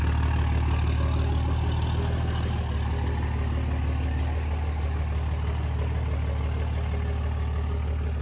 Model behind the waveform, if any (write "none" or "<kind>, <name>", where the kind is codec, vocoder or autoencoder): none